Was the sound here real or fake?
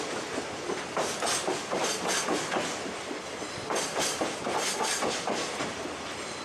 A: real